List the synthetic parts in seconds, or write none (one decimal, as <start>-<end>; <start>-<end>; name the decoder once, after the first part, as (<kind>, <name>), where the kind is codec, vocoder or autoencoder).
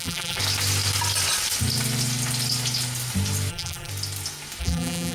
0.0-0.4 (vocoder, BigVGAN v2); 3.5-3.9; 4.6-5.1